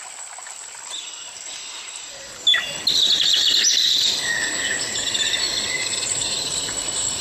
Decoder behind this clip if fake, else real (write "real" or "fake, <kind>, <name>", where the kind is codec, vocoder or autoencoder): real